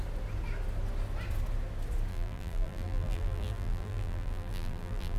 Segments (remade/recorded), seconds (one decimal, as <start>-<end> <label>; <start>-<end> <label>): 0.0-2.1 recorded; 2.1-5.2 remade